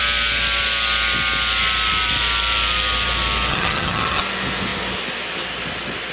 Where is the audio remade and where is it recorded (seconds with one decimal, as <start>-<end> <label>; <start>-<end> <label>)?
0.0-3.5 recorded; 3.5-4.2 remade; 4.2-6.1 recorded